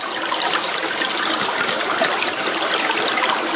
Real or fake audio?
real